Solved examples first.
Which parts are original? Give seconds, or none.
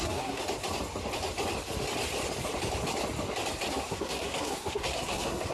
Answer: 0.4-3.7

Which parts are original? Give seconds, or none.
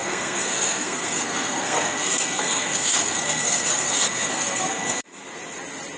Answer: 5.2-6.0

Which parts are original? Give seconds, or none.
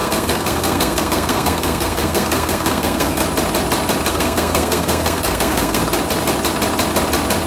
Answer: 3.2-4.1; 5.8-7.5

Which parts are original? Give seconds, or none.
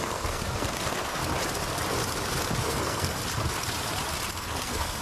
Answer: 1.2-2.6; 3.2-4.3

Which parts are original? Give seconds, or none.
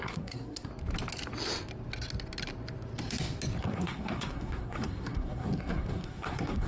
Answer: 0.7-3.6